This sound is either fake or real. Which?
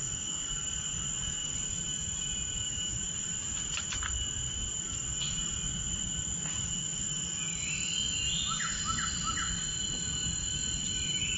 real